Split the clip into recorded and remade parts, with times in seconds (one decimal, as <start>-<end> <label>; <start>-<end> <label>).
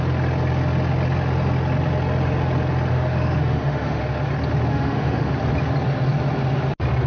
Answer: 0.0-2.9 recorded; 2.9-4.0 remade; 4.0-4.7 recorded; 4.7-5.3 remade; 5.3-7.1 recorded